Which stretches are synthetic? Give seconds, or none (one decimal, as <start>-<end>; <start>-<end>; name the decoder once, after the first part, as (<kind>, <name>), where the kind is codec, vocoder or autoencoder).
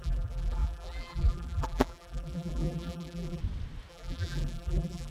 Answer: 0.0-3.4 (vocoder, BigVGAN v2); 3.9-5.1